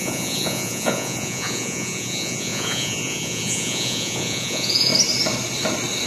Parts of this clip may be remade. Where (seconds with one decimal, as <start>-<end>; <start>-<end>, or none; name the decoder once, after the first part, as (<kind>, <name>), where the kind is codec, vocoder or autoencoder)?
0.0-4.9 (vocoder, Vocos)